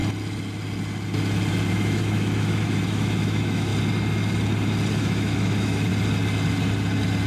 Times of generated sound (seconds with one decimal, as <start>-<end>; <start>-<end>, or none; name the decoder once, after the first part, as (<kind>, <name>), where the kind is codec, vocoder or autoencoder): 1.7-3.7 (autoencoder, DAC-VAE); 5.0-5.9